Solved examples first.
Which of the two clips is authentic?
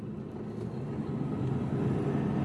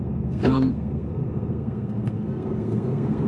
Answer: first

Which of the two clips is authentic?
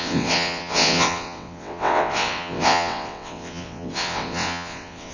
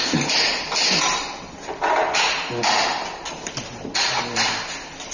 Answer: second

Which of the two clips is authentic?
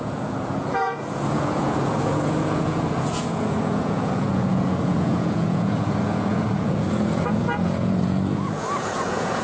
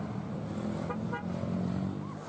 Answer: second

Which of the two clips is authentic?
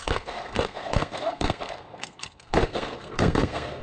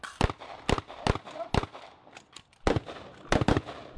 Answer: second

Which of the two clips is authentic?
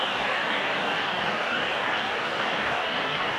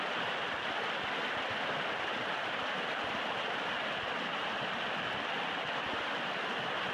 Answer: second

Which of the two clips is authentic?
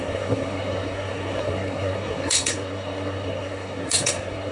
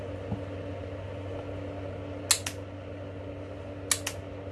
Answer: second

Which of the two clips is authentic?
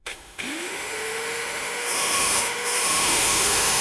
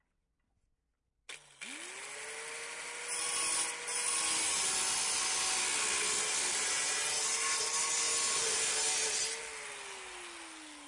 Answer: second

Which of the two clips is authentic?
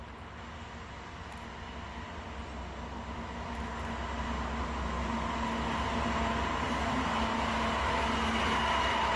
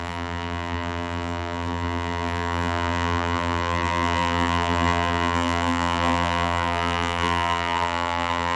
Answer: first